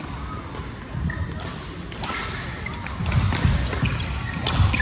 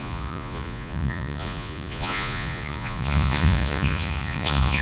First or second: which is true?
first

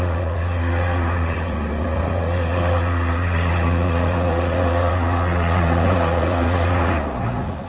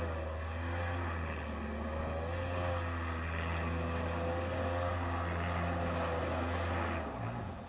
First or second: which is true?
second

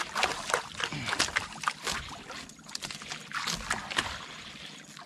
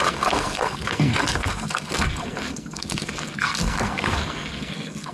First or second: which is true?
first